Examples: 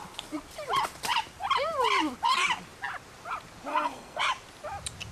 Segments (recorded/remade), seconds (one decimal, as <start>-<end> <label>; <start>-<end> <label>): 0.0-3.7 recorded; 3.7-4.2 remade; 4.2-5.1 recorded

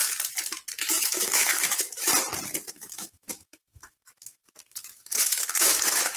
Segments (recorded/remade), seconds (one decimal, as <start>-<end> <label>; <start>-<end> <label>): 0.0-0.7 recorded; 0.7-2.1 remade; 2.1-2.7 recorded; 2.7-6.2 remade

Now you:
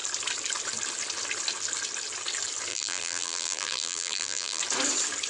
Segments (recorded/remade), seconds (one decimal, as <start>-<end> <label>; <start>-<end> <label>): 0.0-2.7 recorded; 2.7-4.6 remade; 4.6-5.3 recorded

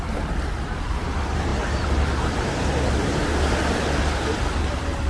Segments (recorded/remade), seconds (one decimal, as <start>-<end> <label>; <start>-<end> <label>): 0.0-5.1 recorded